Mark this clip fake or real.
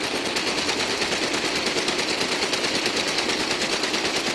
real